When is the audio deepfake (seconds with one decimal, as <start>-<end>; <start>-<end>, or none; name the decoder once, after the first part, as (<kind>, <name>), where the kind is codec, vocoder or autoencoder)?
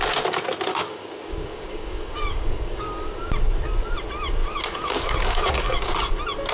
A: 0.7-2.9 (codec, DAC); 4.4-6.1